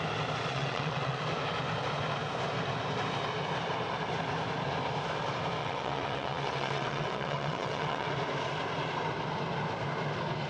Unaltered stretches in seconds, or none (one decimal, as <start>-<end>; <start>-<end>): 0.0-0.5; 1.2-5.6; 8.1-10.5

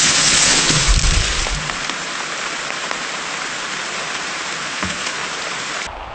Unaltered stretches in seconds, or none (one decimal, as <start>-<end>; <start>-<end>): 0.9-4.6; 5.2-6.1